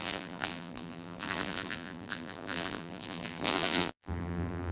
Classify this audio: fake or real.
fake